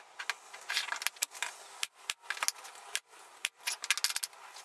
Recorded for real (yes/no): yes